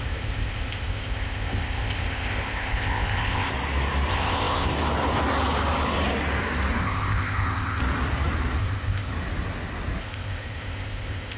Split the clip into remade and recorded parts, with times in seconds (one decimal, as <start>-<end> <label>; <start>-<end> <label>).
0.0-3.5 remade; 3.5-4.1 recorded; 4.1-4.7 remade; 4.7-6.8 recorded; 6.8-7.8 remade; 7.8-8.6 recorded; 8.6-9.1 remade; 9.1-10.0 recorded; 10.0-11.4 remade